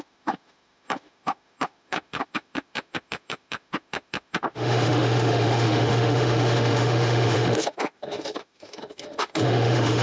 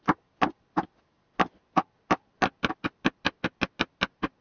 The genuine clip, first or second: second